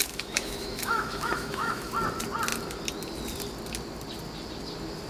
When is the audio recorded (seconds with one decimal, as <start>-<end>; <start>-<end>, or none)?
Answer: 1.9-5.1